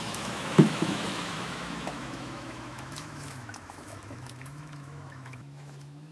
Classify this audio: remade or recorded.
remade